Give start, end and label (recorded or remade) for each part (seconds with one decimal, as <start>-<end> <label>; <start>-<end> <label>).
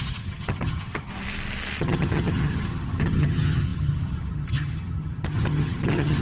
0.0-1.1 remade; 1.1-1.8 recorded; 1.8-6.2 remade